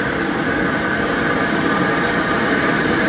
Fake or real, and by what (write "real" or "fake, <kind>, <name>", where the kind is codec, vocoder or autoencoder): real